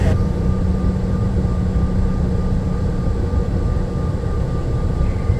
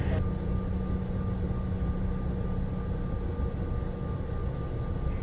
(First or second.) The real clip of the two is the second